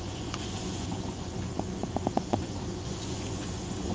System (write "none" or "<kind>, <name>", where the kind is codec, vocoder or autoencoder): vocoder, Vocos